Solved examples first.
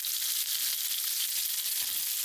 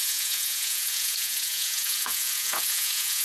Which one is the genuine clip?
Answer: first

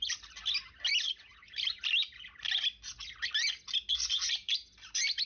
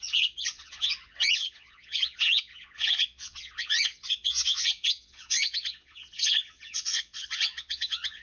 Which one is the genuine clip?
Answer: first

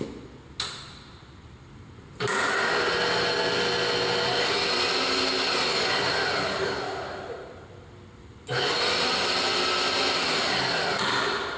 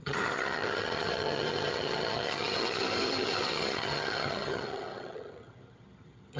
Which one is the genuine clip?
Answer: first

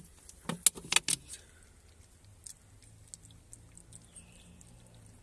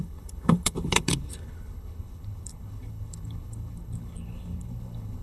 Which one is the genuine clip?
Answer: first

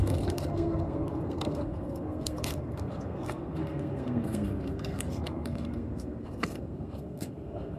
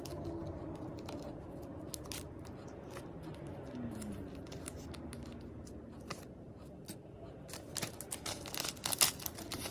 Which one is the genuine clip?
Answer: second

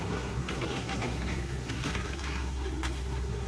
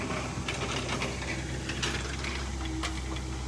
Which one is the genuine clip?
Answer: second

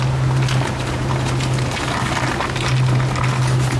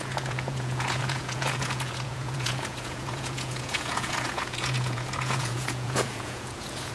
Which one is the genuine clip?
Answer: first